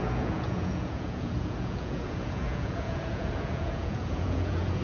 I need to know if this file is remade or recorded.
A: remade